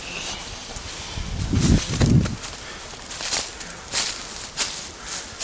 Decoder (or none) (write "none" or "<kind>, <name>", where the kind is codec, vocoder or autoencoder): none